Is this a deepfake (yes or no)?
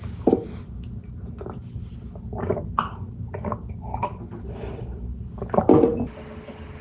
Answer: no